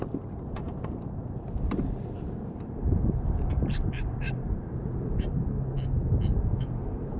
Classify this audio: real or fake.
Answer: fake